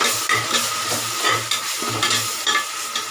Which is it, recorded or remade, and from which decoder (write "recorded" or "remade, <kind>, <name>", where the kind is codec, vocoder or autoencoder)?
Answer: recorded